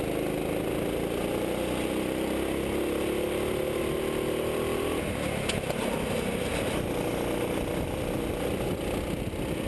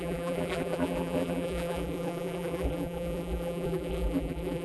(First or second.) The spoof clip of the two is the second